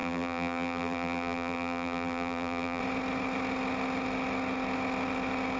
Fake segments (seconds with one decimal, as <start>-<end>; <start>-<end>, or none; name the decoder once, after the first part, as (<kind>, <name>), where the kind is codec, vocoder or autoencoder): 0.0-2.8 (vocoder, BigVGAN v2)